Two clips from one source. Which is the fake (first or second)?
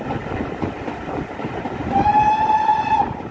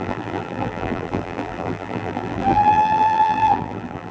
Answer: second